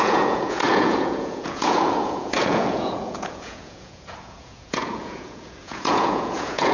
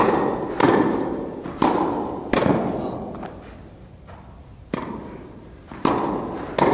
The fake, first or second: first